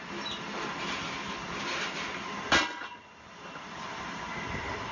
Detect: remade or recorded recorded